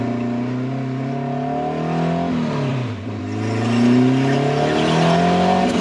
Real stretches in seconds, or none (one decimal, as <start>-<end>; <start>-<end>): 0.0-2.7; 3.2-5.8